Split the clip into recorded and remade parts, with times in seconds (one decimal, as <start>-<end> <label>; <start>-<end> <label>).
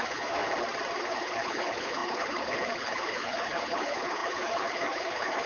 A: 0.0-0.4 remade; 0.4-1.0 recorded; 1.0-5.5 remade